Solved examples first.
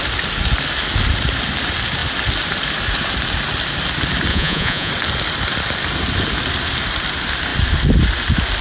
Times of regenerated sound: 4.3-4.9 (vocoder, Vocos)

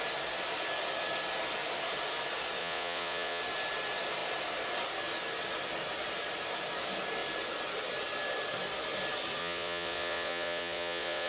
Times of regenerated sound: 2.6-3.4 (vocoder, Vocos); 9.4-11.3

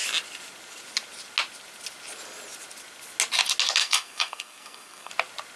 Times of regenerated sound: 3.8-5.1 (codec, SNAC)

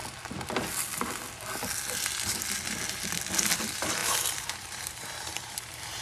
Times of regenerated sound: 3.6-6.0 (vocoder, BigVGAN v2)

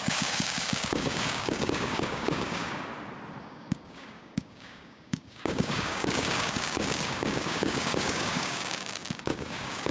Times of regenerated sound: 0.0-2.9 (codec, DAC); 3.4-9.9